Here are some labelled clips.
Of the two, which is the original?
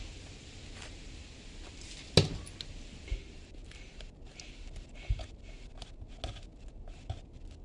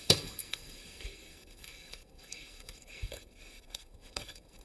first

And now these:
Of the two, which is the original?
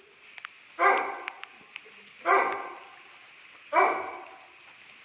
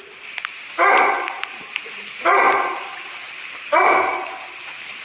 first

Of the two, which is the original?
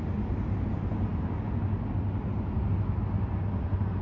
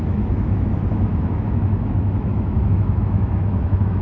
first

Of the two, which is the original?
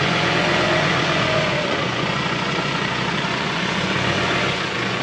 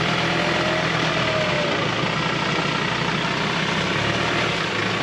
second